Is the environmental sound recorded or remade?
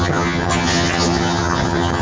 remade